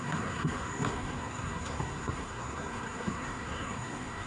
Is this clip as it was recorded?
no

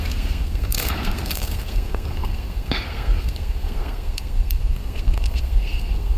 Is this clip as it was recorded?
no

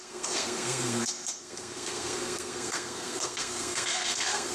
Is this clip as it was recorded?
no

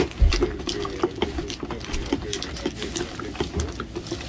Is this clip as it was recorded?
yes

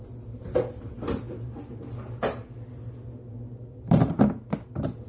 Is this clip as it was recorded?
yes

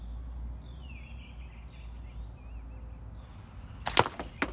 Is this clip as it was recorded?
yes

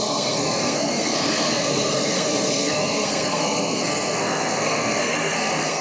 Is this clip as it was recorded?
no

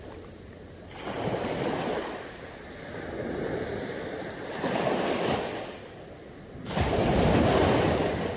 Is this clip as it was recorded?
yes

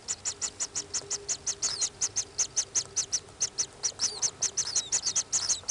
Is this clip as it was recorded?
yes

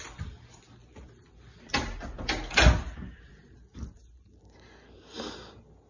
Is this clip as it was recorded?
yes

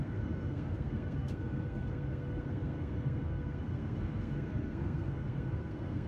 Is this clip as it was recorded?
no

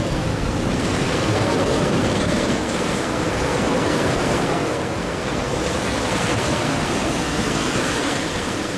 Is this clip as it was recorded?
no